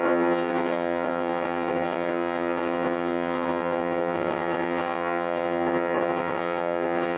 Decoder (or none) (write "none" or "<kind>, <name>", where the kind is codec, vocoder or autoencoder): vocoder, WaveNeXt